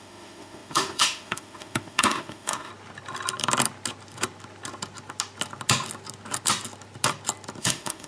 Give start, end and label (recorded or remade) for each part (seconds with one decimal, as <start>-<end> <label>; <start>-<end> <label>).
0.0-2.7 remade; 2.7-7.6 recorded; 7.6-8.1 remade